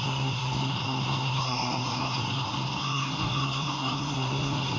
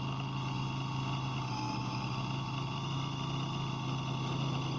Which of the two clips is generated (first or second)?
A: first